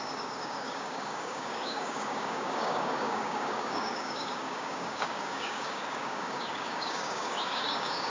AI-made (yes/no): yes